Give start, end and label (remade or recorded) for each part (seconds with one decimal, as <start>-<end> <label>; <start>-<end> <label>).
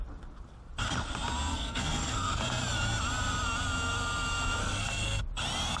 0.0-1.5 recorded; 1.5-2.4 remade; 2.4-4.6 recorded; 4.6-5.2 remade; 5.2-5.8 recorded